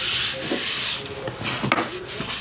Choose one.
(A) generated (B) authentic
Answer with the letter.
B